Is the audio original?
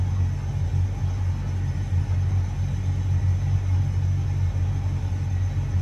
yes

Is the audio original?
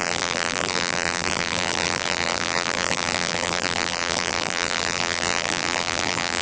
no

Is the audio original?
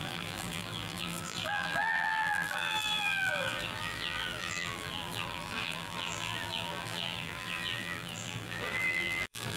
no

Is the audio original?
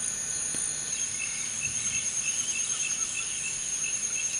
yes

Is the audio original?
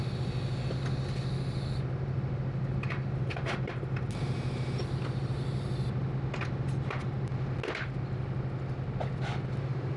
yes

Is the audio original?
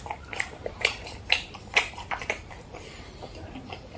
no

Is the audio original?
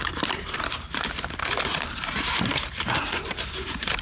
no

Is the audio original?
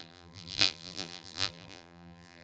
no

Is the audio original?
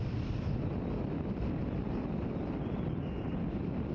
no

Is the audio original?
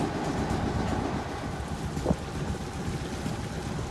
yes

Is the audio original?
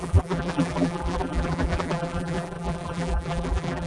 no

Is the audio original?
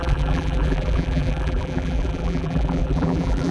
no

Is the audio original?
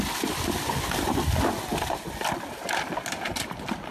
yes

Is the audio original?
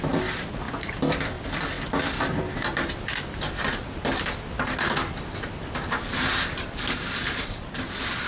yes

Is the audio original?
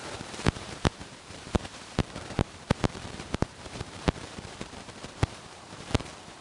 no